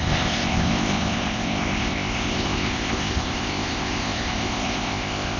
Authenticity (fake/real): fake